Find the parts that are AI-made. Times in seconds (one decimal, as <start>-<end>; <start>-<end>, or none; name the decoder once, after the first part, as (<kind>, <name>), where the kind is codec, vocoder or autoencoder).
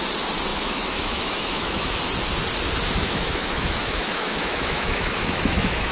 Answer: 0.5-2.0 (autoencoder, DAC-VAE); 3.0-5.9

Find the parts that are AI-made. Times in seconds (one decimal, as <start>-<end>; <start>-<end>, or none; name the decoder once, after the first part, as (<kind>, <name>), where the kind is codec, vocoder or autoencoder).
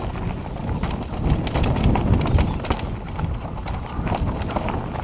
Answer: none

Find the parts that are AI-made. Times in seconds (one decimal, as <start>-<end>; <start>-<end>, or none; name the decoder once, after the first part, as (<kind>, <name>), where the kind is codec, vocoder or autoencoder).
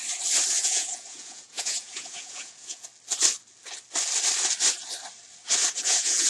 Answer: 0.6-2.9 (vocoder, Vocos); 5.7-6.3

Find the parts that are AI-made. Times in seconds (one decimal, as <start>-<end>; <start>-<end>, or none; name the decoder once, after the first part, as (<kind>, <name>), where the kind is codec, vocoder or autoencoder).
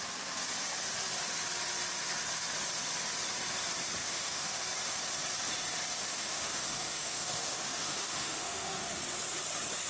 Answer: 4.0-4.6 (autoencoder, DAC-VAE); 6.0-9.0